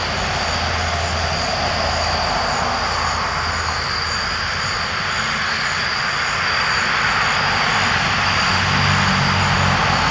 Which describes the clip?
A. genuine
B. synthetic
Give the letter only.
A